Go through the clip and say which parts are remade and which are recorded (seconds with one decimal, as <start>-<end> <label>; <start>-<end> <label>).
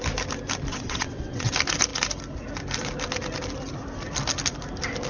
0.0-0.7 recorded; 0.7-1.5 remade; 1.5-5.1 recorded